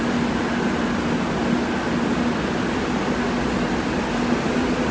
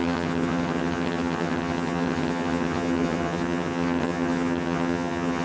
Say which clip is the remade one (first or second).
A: second